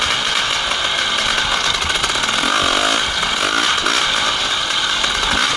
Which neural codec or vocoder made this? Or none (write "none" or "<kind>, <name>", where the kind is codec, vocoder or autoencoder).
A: none